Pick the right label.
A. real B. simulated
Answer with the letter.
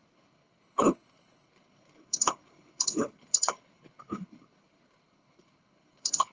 B